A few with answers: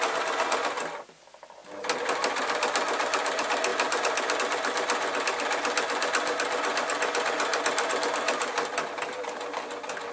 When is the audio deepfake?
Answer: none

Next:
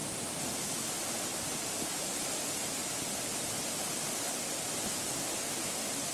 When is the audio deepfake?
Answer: none

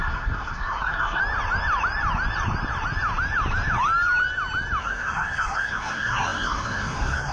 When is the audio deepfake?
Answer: 0.0-1.2 (codec, SNAC); 4.8-7.3

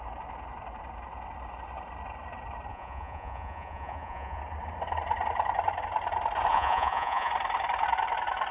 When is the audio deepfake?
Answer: 2.7-4.4 (vocoder, Vocos); 6.5-7.3

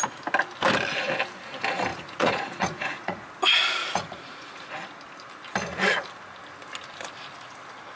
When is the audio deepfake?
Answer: 1.9-3.3 (vocoder, Vocos); 3.8-4.7

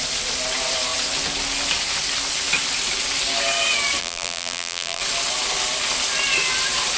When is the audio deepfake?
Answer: 4.0-5.0 (vocoder, BigVGAN v2)